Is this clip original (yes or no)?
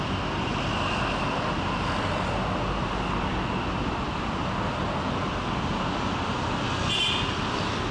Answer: yes